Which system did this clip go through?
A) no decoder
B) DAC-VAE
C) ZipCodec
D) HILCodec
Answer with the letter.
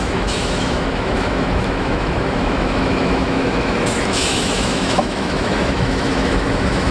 B